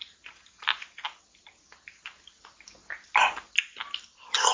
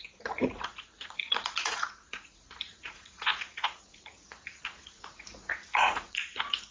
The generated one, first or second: second